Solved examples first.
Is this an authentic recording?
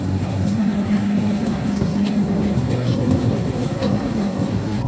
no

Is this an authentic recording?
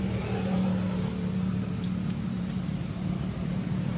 yes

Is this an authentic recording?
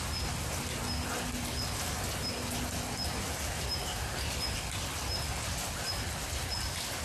yes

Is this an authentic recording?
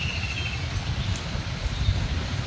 yes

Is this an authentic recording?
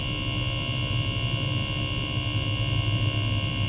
yes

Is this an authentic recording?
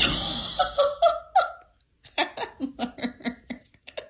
yes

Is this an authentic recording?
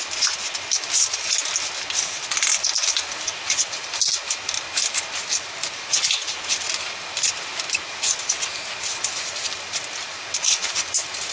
yes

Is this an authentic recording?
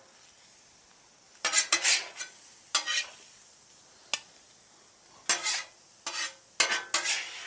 yes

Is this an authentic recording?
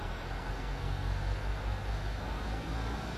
no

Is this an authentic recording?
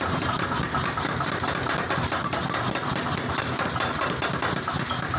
yes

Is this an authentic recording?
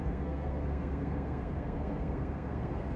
no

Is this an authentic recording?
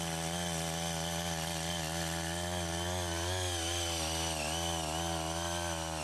yes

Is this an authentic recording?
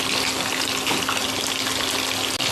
yes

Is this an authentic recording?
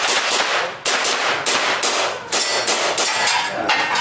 yes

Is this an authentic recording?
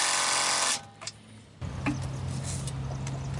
yes